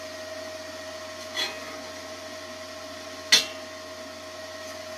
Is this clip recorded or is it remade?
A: recorded